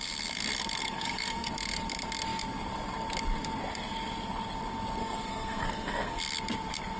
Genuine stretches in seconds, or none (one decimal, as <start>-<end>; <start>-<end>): 0.0-0.8; 1.5-5.0; 6.2-7.0

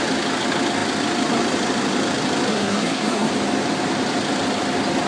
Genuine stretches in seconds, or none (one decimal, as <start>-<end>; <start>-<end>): 0.0-2.5; 3.3-5.1

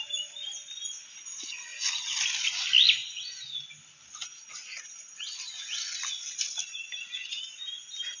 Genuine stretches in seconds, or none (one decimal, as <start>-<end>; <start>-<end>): 0.0-8.2

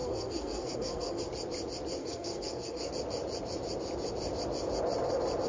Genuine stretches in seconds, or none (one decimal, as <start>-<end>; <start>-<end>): 1.2-2.0; 2.9-5.5

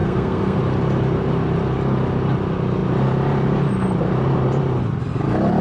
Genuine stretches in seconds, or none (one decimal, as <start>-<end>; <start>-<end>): 0.6-5.6

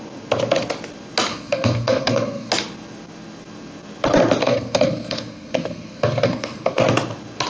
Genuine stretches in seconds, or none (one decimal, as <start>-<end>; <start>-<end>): 0.0-1.3; 2.5-4.4; 6.8-7.5

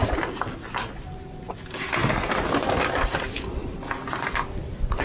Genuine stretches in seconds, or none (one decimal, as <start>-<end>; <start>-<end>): 0.0-5.0